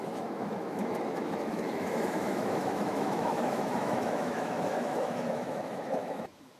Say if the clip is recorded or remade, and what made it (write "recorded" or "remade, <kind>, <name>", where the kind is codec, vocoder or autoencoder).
remade, autoencoder, DAC-VAE